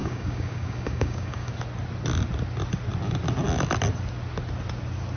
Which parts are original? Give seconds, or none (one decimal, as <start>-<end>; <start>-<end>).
1.5-5.2